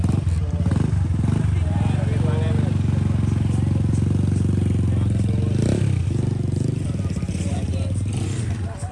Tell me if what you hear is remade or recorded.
recorded